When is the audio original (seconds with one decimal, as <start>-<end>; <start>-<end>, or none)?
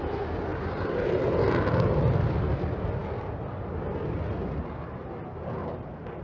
0.0-0.5; 1.2-5.6